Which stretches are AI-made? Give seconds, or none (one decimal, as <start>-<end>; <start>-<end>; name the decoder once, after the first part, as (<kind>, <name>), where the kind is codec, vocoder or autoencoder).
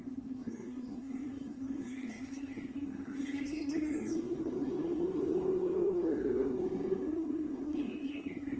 0.0-8.6 (codec, SNAC)